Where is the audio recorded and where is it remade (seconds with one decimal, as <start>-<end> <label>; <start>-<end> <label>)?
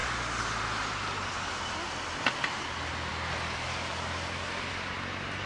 0.0-5.5 recorded